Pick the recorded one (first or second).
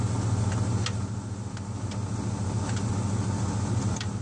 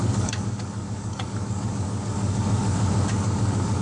first